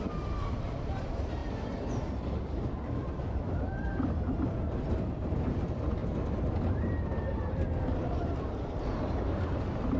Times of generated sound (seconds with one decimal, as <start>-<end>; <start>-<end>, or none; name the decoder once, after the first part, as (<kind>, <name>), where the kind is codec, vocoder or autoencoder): 0.0-1.4 (vocoder, BigVGAN v2); 2.5-6.0; 6.7-10.0